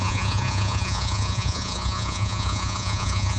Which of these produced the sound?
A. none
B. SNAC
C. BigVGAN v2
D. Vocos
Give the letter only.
D